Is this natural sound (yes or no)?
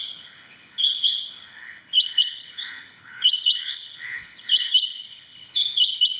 no